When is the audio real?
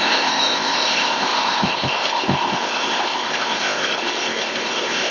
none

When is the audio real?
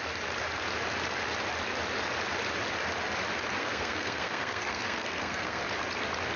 0.0-3.6; 5.6-6.4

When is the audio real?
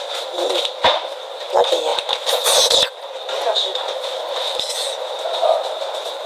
0.0-6.3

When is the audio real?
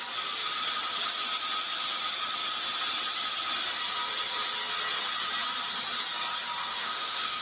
0.0-6.7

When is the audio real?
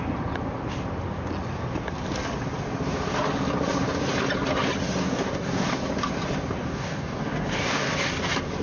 0.0-5.0; 5.8-6.6; 7.9-8.6